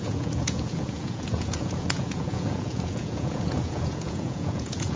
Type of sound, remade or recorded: remade